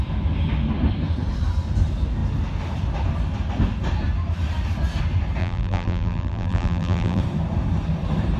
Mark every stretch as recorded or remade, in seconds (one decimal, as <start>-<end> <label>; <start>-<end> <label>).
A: 0.0-5.4 recorded; 5.4-7.2 remade; 7.2-8.4 recorded